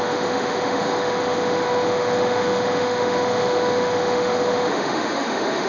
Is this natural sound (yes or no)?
no